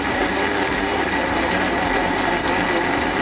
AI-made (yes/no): no